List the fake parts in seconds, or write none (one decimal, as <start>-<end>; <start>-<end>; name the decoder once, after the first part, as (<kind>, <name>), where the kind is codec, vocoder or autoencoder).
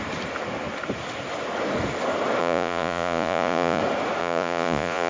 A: 2.4-3.8 (vocoder, Vocos); 4.2-5.1